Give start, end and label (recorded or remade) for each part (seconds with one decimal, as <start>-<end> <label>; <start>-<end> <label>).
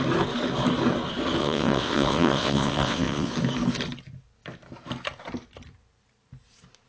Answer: 0.0-1.4 recorded; 1.4-3.3 remade; 3.3-6.9 recorded